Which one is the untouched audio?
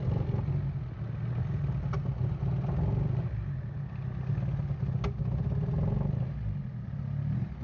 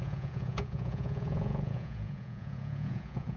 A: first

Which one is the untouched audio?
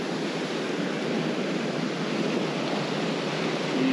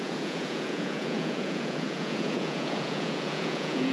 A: first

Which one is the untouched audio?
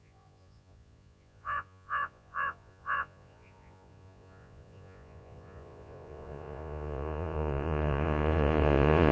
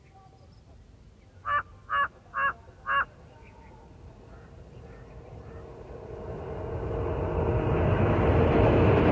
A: second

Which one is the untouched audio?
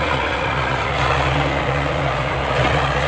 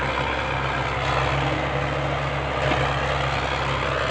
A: second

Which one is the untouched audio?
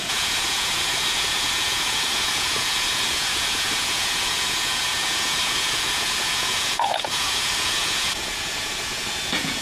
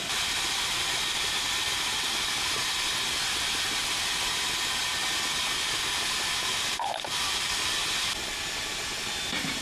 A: second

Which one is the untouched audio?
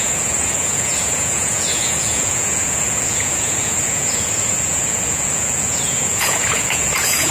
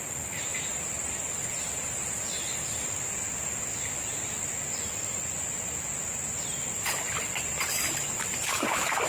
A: second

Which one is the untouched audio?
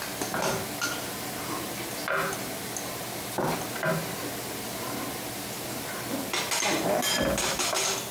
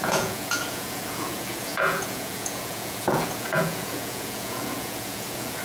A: first